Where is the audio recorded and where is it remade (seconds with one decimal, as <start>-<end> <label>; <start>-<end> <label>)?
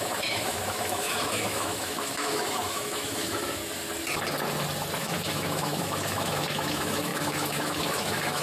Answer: 0.0-3.6 remade; 3.6-5.0 recorded; 5.0-8.4 remade